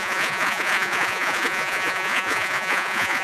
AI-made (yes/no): yes